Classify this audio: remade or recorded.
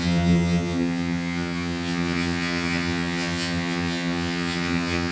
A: remade